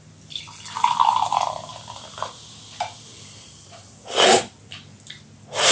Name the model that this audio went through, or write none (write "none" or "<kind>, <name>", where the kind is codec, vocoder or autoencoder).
none